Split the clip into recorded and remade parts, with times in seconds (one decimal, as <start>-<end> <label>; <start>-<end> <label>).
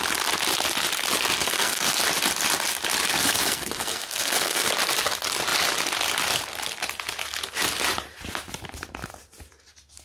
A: 0.0-1.4 recorded; 1.4-1.9 remade; 1.9-3.1 recorded; 3.1-4.7 remade; 4.7-10.0 recorded